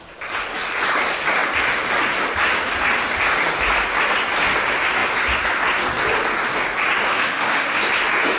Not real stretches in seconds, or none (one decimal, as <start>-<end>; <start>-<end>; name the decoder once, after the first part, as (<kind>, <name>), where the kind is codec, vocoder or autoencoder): 7.1-7.8 (autoencoder, DAC-VAE)